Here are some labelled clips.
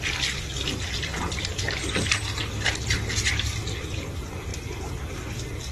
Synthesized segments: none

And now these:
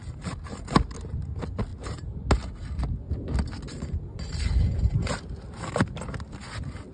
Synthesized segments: none

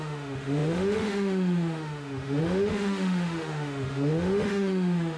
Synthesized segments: 0.0-5.2 (autoencoder, DAC-VAE)

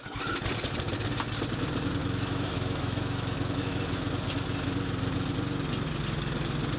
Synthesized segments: 2.0-4.1 (autoencoder, DAC-VAE)

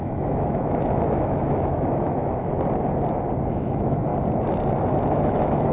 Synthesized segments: 0.0-2.5 (autoencoder, DAC-VAE); 3.5-4.1; 4.8-5.7

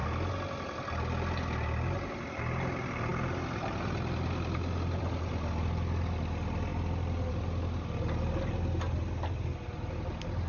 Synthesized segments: none

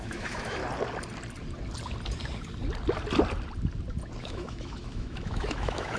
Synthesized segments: 0.0-0.6 (autoencoder, DAC-VAE); 4.2-6.0

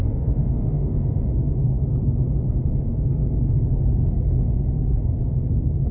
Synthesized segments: 0.0-1.8 (autoencoder, DAC-VAE)